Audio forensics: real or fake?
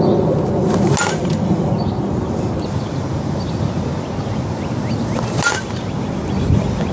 real